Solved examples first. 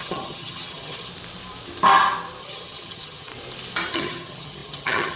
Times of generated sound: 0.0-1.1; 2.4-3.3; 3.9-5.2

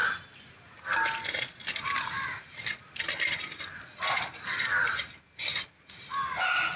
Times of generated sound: none